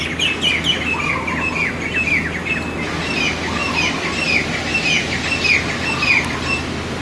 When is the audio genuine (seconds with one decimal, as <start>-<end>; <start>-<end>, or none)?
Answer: 0.0-7.0